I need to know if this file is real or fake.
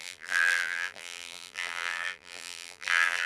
fake